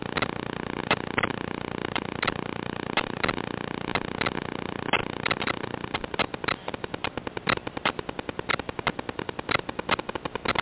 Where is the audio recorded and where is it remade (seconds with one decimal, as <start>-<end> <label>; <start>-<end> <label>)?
0.0-1.8 recorded; 1.8-4.1 remade; 4.1-5.0 recorded; 5.0-10.1 remade; 10.1-10.6 recorded